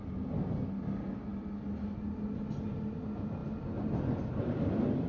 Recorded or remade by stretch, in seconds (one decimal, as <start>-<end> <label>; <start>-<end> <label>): 0.0-5.1 recorded